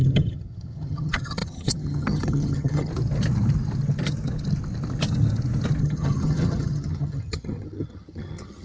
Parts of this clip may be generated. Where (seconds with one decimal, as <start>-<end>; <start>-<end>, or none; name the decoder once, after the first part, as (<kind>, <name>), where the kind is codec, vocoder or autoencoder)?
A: 0.0-2.9 (vocoder, HiFi-GAN); 5.8-8.6